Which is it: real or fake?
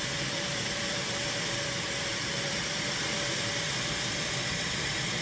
fake